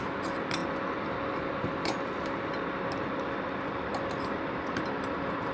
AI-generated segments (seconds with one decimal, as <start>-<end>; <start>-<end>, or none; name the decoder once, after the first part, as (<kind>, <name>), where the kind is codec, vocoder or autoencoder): none